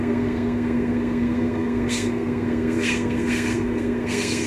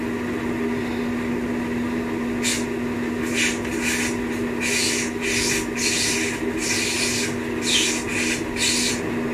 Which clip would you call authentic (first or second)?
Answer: second